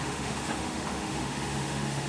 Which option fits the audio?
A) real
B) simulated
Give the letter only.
B